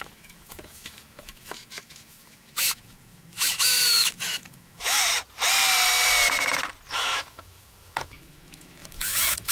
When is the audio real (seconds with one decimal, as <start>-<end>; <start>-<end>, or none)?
5.1-6.9

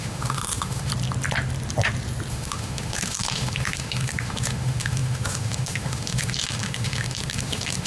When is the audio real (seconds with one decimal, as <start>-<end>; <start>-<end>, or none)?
0.9-2.3

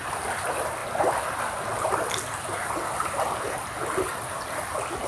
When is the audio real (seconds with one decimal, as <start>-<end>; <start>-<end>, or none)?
0.0-5.1

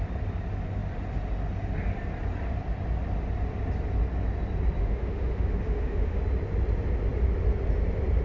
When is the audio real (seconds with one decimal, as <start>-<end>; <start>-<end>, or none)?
0.0-4.8; 6.2-8.2

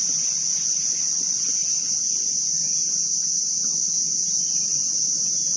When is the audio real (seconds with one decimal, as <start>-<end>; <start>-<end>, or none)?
0.0-5.6

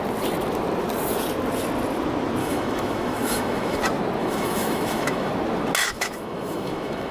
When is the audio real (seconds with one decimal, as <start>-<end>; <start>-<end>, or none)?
0.0-2.4; 3.8-4.2; 5.3-5.8

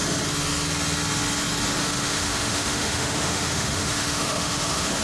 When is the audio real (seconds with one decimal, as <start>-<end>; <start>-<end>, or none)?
0.0-1.8

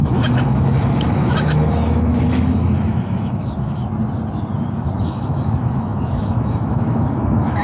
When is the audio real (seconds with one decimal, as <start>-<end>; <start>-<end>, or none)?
3.8-5.0